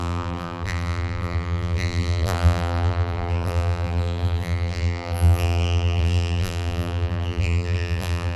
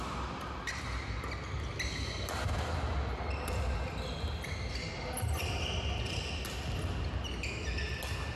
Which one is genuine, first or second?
second